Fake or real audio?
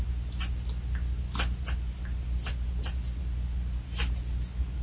real